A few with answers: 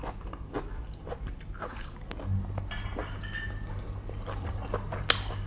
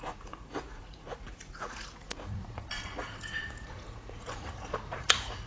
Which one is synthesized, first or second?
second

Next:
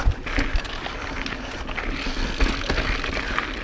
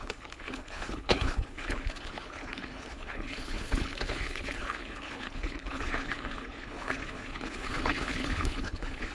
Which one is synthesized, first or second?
second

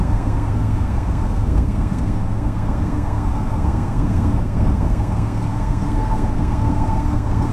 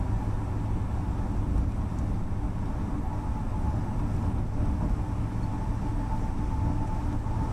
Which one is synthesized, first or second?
first